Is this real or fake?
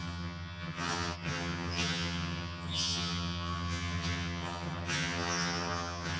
fake